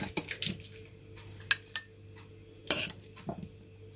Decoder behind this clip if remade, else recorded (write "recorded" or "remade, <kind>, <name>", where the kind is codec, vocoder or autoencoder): recorded